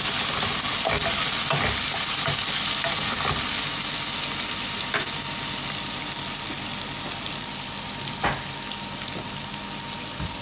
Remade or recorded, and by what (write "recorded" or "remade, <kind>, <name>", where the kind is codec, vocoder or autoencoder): recorded